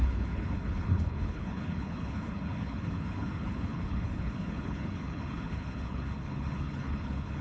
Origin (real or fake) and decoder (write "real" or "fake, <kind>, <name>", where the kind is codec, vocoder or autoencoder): fake, codec, HILCodec